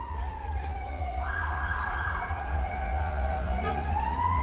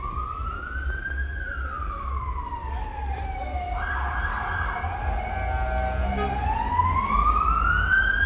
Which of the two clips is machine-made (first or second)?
first